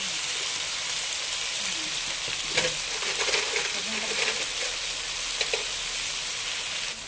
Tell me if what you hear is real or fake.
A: real